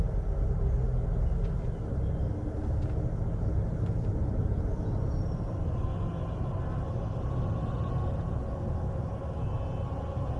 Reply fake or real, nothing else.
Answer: real